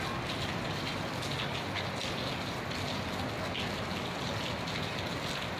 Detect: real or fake real